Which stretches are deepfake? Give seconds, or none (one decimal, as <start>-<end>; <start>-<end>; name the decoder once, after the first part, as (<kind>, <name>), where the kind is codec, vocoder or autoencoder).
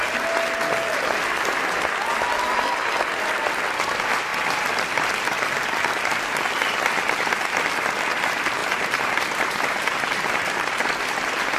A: 8.6-10.8 (vocoder, BigVGAN v2)